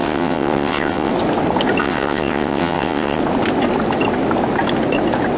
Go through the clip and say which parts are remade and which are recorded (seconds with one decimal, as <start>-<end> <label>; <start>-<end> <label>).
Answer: 0.0-1.1 remade; 1.1-1.8 recorded; 1.8-3.2 remade; 3.2-5.4 recorded